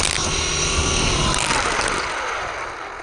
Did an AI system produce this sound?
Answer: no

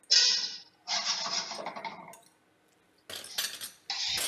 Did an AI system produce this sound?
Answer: no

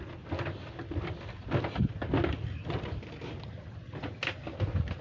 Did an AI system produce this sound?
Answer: no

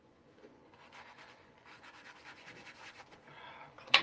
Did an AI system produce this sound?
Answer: yes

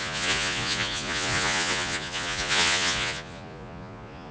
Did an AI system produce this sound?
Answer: yes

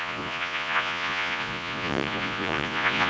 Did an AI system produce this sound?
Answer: yes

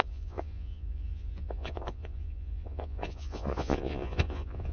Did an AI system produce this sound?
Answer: yes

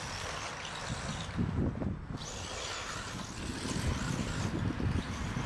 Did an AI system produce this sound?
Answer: no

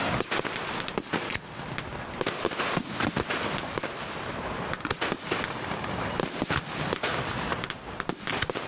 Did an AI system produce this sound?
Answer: no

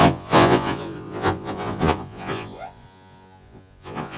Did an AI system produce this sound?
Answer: yes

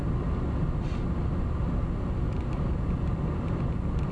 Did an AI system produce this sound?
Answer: no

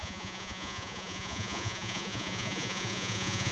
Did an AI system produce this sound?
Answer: yes